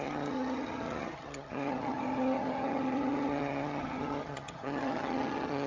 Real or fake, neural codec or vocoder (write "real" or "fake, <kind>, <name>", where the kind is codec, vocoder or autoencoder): fake, vocoder, HiFi-GAN